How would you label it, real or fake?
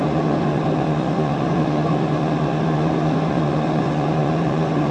fake